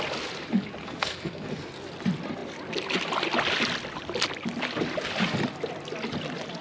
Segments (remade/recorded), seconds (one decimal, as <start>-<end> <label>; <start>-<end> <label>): 0.0-0.8 recorded; 0.8-1.5 remade; 1.5-6.6 recorded